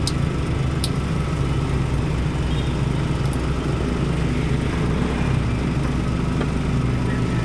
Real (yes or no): yes